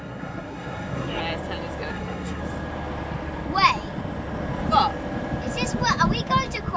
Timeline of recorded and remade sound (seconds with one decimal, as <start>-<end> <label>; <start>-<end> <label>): 0.0-1.2 remade; 1.2-1.9 recorded; 1.9-2.4 remade; 2.4-6.8 recorded